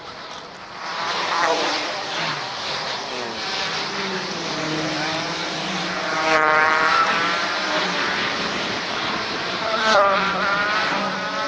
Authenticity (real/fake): fake